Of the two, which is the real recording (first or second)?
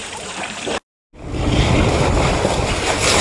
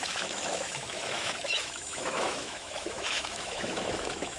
first